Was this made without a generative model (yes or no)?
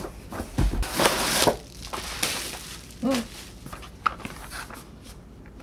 yes